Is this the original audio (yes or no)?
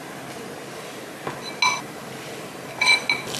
yes